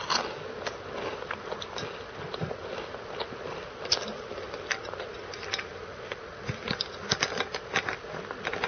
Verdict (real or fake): real